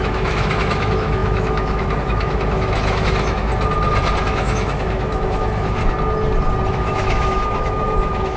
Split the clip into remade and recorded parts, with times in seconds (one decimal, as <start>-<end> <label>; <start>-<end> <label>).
0.0-3.5 remade; 3.5-4.2 recorded; 4.2-5.8 remade; 5.8-6.7 recorded; 6.7-8.4 remade